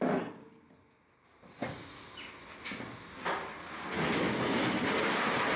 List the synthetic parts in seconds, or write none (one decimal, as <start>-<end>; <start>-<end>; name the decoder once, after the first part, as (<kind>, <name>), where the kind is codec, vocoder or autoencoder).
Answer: none

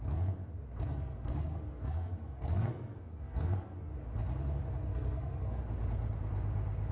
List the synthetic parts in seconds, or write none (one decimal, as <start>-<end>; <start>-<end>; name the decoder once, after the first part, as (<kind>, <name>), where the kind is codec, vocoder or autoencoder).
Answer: 0.9-3.9 (codec, SNAC); 4.9-5.6

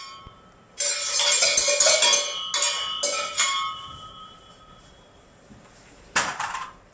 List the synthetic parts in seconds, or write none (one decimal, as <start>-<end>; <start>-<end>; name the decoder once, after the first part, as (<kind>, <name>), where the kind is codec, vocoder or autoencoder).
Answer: 0.0-0.9 (vocoder, BigVGAN v2); 4.2-6.9

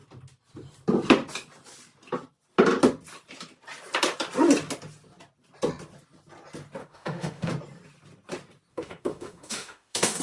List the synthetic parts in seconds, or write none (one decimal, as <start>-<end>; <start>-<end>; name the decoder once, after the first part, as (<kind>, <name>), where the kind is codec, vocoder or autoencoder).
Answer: 6.8-7.5 (autoencoder, DAC-VAE); 8.7-10.2

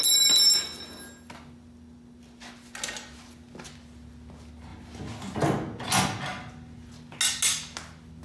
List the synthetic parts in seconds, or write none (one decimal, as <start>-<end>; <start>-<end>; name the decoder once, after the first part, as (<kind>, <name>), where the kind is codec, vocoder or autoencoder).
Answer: none